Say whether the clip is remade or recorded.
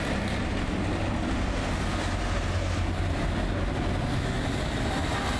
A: recorded